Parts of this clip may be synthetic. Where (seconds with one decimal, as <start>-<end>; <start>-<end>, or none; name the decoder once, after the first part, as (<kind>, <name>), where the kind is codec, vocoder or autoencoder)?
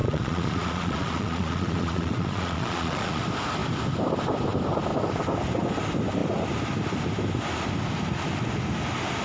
0.0-3.2 (vocoder, Vocos)